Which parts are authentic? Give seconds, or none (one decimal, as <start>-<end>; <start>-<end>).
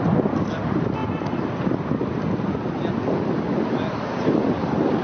0.0-5.0